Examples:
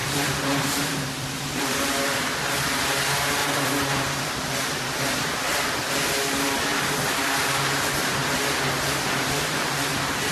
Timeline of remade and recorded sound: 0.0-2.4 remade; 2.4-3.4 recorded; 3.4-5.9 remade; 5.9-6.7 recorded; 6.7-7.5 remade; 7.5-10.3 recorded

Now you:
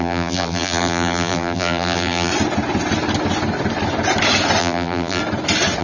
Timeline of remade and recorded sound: 0.0-2.3 remade; 2.3-4.6 recorded; 4.6-5.2 remade; 5.2-5.8 recorded

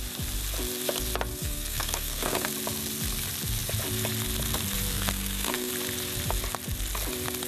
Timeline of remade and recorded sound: 0.0-1.3 recorded; 1.3-2.5 remade; 2.5-4.9 recorded; 4.9-5.7 remade; 5.7-7.5 recorded

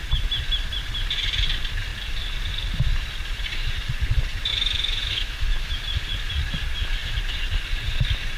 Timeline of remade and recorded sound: 0.0-4.5 recorded; 4.5-5.8 remade; 5.8-8.4 recorded

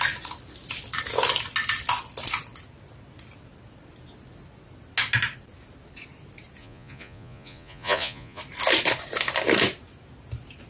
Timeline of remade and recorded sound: 0.0-6.6 recorded; 6.6-8.4 remade; 8.4-10.7 recorded

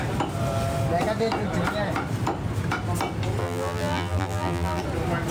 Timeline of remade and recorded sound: 0.0-3.4 recorded; 3.4-4.8 remade; 4.8-5.3 recorded

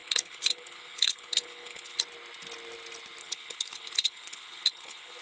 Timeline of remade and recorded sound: 0.0-2.0 remade; 2.0-3.2 recorded; 3.2-5.2 remade